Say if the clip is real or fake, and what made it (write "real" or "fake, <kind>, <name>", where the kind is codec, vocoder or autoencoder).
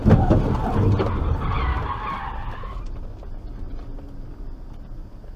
real